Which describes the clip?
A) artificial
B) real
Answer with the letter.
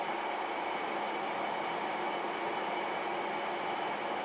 B